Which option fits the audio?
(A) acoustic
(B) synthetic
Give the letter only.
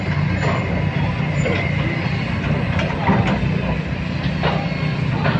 A